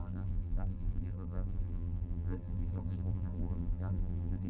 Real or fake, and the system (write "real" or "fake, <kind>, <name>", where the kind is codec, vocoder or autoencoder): fake, vocoder, BigVGAN v2